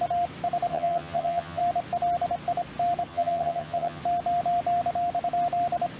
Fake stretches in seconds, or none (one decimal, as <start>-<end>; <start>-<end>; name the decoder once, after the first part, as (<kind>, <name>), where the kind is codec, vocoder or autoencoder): 0.7-1.6 (vocoder, HiFi-GAN); 3.1-4.0